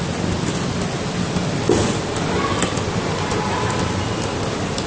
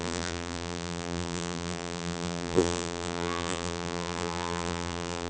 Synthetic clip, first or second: second